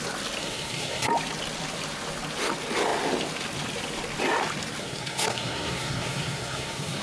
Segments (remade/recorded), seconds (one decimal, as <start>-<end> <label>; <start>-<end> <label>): 0.0-0.4 recorded; 0.4-1.1 remade; 1.1-4.8 recorded; 4.8-7.0 remade